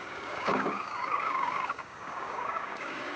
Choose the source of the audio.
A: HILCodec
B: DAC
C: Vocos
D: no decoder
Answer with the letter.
B